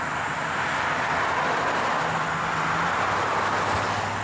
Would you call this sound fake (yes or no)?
no